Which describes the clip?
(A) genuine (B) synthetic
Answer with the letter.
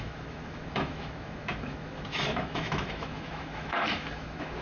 B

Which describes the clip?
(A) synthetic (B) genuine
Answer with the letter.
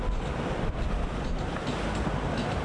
B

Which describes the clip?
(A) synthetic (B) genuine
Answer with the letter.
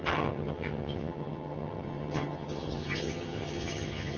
A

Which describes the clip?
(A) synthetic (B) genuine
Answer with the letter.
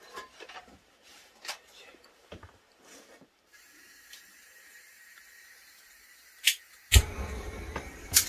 A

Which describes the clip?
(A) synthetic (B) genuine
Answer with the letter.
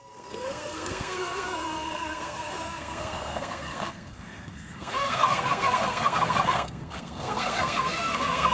A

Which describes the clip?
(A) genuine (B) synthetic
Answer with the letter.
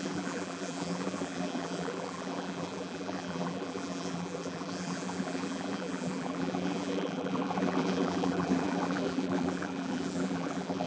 B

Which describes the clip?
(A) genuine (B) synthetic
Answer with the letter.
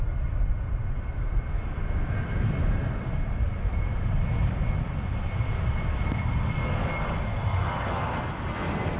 A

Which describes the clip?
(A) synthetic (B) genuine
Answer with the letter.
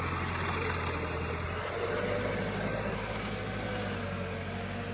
B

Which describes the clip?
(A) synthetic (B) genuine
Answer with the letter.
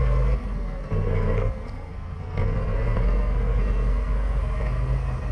A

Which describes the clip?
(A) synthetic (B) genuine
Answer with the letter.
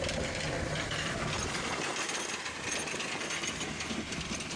B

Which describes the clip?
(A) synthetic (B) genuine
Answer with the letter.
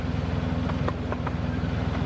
B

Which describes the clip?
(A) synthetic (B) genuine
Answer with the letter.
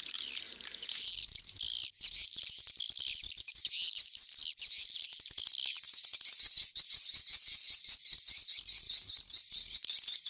B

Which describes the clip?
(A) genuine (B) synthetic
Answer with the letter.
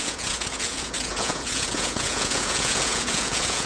B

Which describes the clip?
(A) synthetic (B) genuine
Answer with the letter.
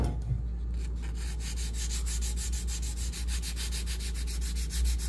B